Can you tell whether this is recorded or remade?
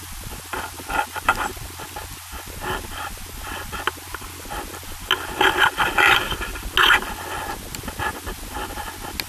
recorded